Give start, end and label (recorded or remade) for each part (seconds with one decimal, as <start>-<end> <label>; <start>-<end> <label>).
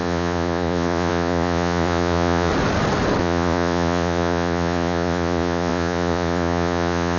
0.0-2.5 remade; 2.5-3.2 recorded; 3.2-7.2 remade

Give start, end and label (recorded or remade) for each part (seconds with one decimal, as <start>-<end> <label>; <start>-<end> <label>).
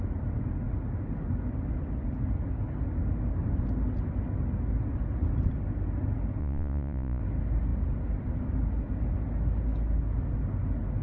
0.0-6.4 recorded; 6.4-7.2 remade; 7.2-11.0 recorded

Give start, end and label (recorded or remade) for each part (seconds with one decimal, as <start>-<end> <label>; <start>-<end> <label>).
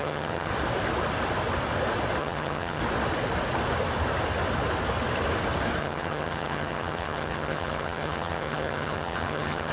0.0-0.5 remade; 0.5-2.2 recorded; 2.2-2.8 remade; 2.8-5.8 recorded; 5.8-9.7 remade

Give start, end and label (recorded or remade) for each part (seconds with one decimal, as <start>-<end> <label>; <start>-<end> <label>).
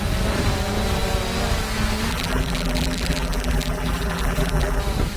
0.0-2.1 recorded; 2.1-4.8 remade; 4.8-5.2 recorded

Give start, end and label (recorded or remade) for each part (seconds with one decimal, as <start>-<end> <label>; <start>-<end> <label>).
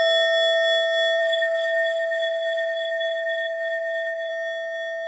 0.0-1.2 recorded; 1.2-4.3 remade; 4.3-5.1 recorded